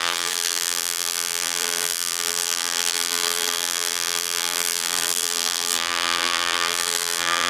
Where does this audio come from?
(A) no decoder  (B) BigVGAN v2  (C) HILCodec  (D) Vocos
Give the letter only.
B